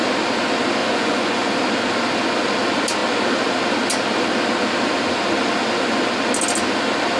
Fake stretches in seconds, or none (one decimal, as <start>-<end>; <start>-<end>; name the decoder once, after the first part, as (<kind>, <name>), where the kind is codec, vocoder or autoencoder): 0.8-1.5 (vocoder, Vocos)